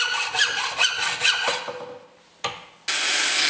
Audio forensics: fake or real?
real